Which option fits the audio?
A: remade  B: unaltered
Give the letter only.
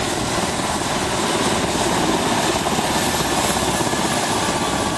B